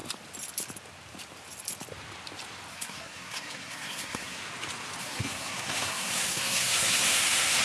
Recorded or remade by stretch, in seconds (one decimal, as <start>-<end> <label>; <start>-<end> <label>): 0.0-2.7 recorded; 2.7-4.4 remade; 4.4-5.0 recorded; 5.0-7.6 remade